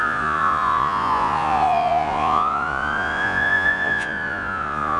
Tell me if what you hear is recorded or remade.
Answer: remade